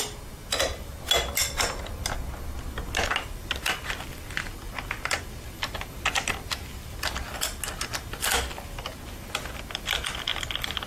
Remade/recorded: recorded